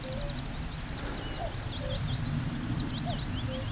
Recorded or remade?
recorded